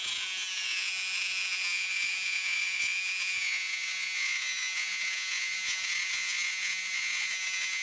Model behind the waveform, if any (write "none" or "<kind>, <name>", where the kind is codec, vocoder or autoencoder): vocoder, Vocos